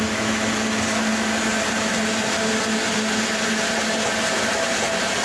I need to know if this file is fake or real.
real